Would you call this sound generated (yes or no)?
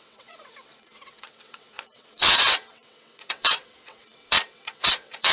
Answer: yes